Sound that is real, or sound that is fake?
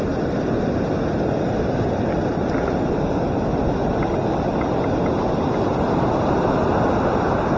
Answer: real